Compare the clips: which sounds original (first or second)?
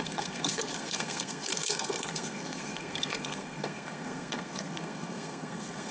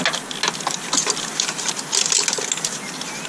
second